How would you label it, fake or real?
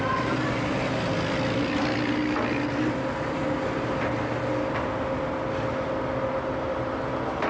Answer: real